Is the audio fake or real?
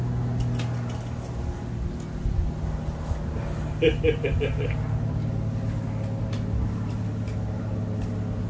real